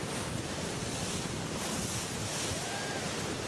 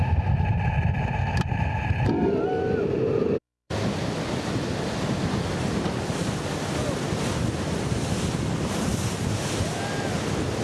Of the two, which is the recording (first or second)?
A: second